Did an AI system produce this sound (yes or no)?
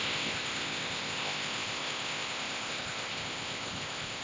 yes